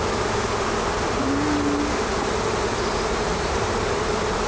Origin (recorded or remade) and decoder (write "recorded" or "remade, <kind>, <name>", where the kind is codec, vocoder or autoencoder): recorded